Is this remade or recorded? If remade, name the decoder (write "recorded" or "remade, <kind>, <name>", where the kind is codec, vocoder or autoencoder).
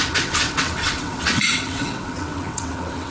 remade, vocoder, WaveNeXt